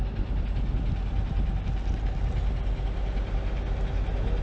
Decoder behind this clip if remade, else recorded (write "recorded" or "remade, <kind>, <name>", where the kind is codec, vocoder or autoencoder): recorded